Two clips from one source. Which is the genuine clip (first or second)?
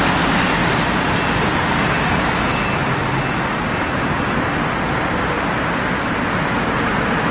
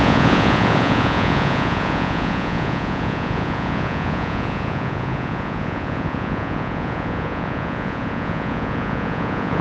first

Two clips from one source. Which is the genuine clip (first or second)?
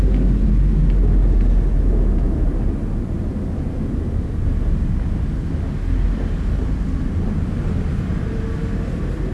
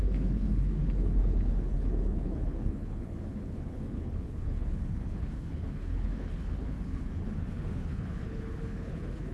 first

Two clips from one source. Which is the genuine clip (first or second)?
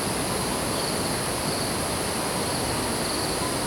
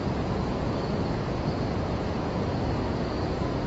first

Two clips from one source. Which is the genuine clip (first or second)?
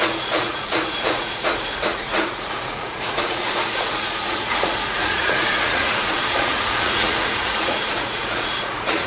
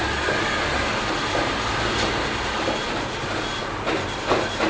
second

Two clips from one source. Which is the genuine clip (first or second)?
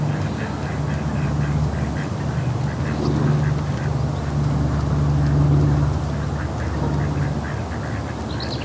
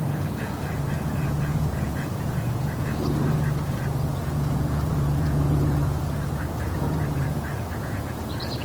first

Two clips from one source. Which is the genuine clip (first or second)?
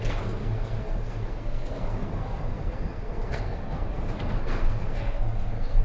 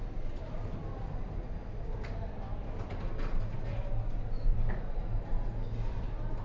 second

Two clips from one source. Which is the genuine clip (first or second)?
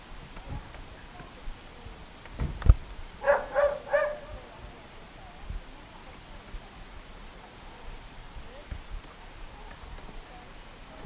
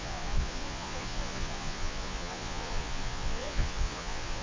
first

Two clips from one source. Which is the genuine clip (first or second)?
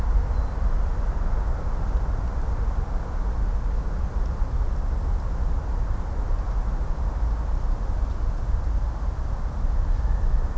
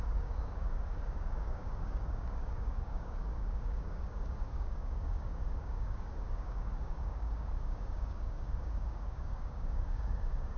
first